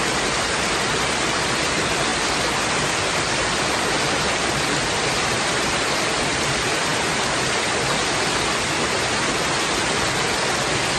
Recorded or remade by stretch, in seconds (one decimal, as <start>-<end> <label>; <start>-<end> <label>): 0.0-11.0 recorded